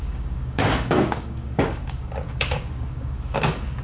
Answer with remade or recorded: remade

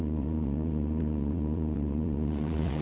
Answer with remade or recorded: remade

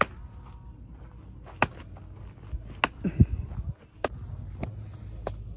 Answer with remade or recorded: recorded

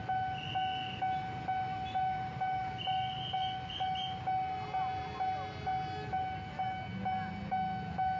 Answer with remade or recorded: recorded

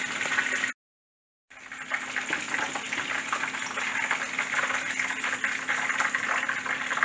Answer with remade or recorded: recorded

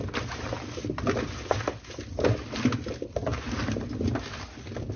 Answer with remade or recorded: recorded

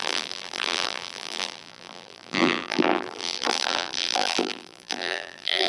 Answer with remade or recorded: remade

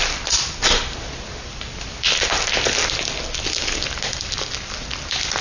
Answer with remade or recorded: recorded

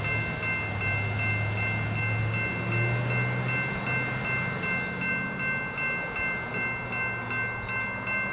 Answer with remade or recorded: recorded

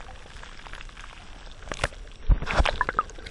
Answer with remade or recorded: recorded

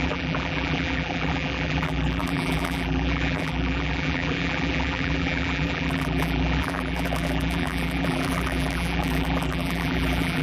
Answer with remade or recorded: remade